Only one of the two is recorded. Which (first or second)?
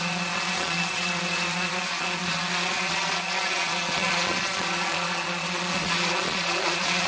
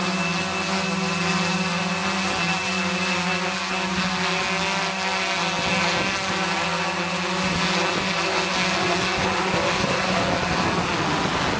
second